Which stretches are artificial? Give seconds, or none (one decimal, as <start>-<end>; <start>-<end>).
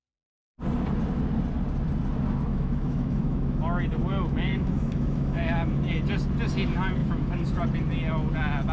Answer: 2.5-3.6; 4.0-5.8; 7.0-7.6